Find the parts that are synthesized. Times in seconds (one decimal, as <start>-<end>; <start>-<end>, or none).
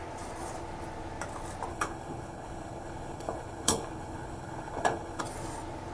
1.7-5.2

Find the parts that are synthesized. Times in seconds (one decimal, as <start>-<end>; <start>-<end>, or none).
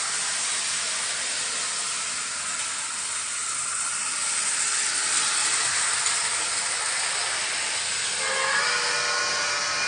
3.4-4.5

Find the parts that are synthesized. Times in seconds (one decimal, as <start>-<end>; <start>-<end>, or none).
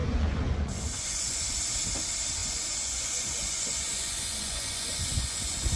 0.0-1.6; 2.4-5.8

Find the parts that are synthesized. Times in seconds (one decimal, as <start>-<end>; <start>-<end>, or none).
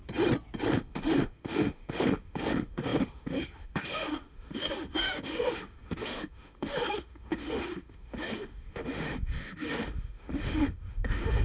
0.7-11.4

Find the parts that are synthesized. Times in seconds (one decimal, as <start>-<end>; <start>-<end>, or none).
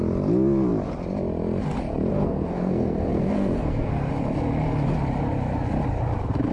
2.1-4.1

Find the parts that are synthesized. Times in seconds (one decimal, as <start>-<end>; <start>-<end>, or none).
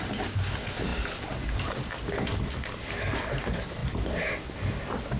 none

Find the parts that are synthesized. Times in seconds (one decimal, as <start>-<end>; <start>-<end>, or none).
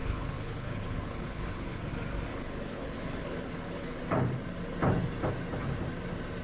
0.0-1.9; 2.3-4.0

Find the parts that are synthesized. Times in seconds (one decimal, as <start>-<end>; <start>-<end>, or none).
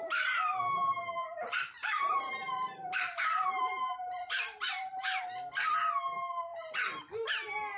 0.5-5.2; 6.5-7.3